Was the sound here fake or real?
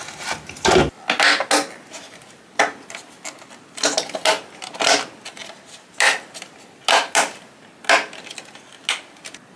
real